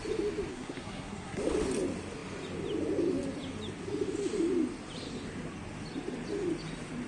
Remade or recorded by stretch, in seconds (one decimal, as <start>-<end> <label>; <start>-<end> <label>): 0.0-0.5 recorded; 0.5-1.4 remade; 1.4-7.1 recorded